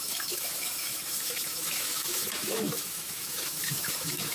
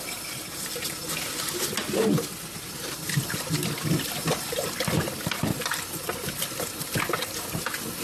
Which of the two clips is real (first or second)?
second